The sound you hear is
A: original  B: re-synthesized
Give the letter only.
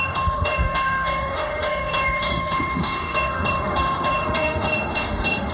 B